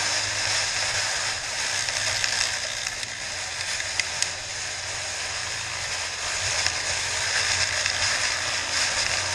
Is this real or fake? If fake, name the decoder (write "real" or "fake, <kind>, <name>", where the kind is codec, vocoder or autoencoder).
real